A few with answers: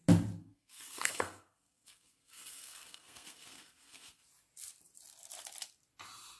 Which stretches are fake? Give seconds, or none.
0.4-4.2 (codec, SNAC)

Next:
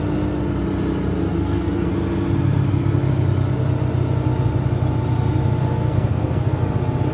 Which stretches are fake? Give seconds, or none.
1.3-1.9 (codec, SNAC); 5.6-6.6

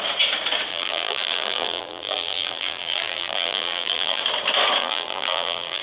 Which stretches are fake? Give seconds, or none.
0.7-4.2 (vocoder, BigVGAN v2); 4.8-5.8

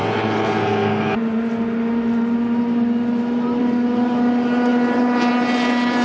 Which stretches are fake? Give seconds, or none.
none

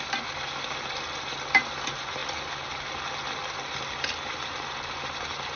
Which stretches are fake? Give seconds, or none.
none

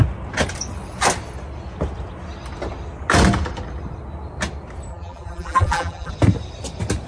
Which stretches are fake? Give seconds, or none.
4.9-6.1 (vocoder, BigVGAN v2)

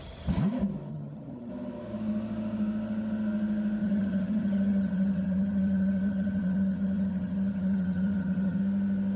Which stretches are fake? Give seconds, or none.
0.9-1.5 (vocoder, HiFi-GAN); 3.8-8.6